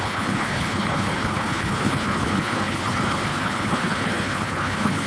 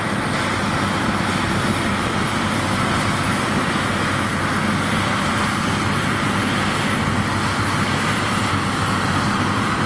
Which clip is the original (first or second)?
second